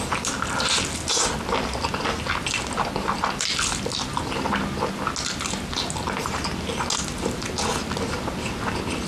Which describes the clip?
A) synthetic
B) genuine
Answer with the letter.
B